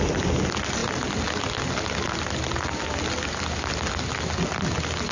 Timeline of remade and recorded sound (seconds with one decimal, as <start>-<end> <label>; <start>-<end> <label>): 0.0-5.1 recorded